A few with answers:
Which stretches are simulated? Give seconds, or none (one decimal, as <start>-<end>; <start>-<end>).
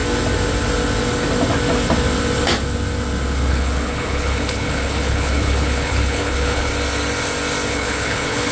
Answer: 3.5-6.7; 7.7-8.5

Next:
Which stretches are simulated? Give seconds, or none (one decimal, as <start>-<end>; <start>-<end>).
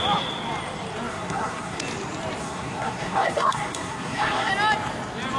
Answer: 1.1-1.8; 2.4-4.5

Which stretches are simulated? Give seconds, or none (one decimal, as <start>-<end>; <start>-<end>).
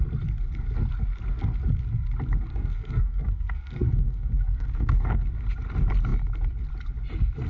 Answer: 2.5-5.3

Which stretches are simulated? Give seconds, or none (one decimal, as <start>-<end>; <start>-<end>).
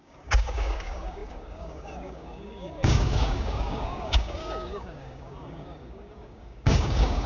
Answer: 0.0-7.3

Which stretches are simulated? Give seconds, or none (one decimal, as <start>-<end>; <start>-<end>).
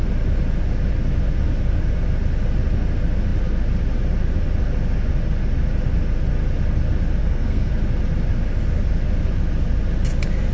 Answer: 7.2-7.7